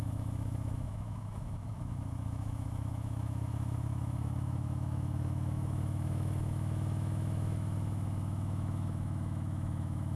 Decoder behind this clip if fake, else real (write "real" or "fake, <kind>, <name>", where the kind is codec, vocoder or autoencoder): fake, autoencoder, DAC-VAE